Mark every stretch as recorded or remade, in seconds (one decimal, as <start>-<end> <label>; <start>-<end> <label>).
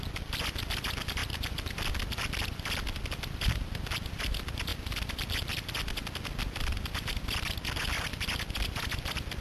0.0-9.4 recorded